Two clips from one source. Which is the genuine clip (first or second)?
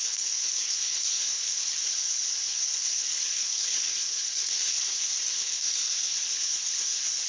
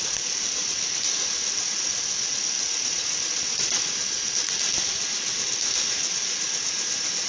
second